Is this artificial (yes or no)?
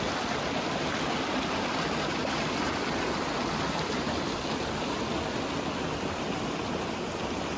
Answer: no